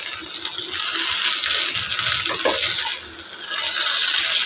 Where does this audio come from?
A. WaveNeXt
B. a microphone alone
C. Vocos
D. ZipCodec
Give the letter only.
B